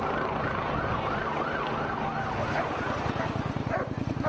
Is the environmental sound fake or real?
real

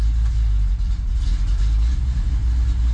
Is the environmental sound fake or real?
real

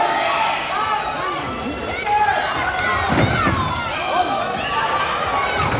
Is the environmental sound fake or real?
real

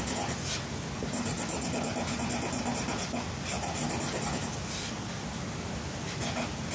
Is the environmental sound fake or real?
real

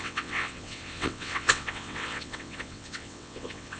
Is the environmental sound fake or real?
fake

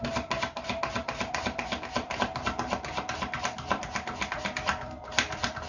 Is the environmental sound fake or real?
real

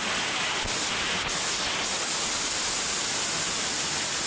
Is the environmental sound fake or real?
real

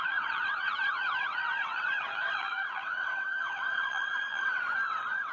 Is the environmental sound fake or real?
fake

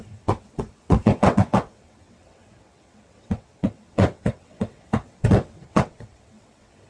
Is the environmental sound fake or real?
fake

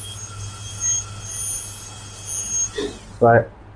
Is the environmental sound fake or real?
real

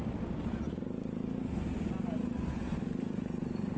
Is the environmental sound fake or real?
real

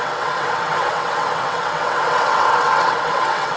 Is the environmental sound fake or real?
fake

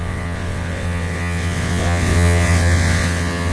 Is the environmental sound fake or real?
fake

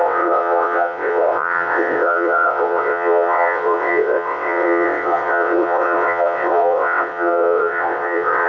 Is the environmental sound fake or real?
fake